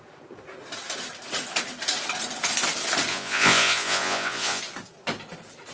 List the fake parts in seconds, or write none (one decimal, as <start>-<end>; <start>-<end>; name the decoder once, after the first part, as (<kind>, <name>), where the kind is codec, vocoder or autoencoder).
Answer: 3.1-4.6 (vocoder, Vocos)